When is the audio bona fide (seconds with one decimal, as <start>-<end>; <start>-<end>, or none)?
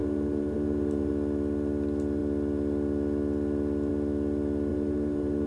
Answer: 1.1-4.7